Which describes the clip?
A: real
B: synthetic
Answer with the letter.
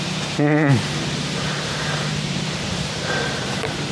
B